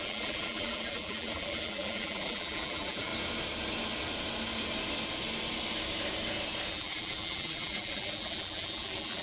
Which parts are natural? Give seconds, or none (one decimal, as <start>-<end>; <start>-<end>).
3.1-6.7